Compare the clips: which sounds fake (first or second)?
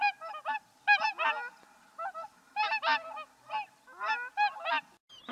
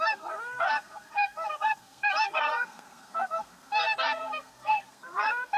second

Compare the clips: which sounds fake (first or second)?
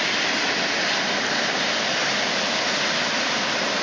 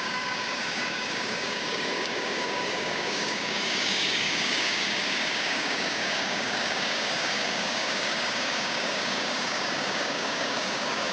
second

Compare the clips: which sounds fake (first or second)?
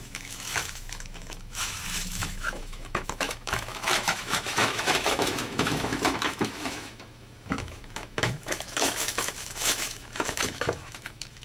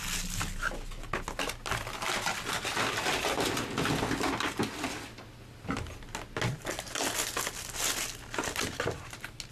first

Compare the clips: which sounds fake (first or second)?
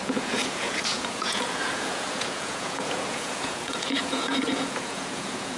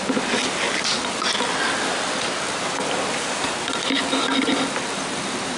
first